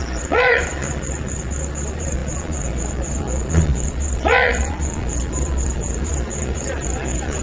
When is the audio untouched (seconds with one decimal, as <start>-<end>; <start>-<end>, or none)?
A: none